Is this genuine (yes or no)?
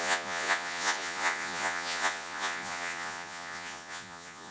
no